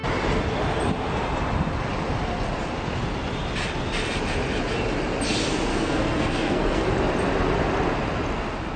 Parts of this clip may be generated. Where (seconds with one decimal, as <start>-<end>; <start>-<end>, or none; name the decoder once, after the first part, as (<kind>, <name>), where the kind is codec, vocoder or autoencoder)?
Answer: 5.7-6.9 (codec, SNAC)